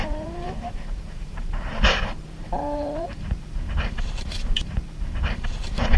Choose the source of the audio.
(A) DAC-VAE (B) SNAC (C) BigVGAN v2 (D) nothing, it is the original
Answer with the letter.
C